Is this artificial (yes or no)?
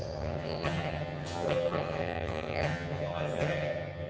yes